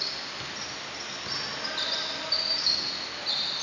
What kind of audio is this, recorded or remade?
recorded